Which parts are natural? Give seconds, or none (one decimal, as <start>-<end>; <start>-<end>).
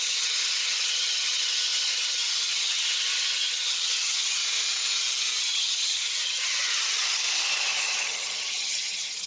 4.4-5.4; 7.2-7.8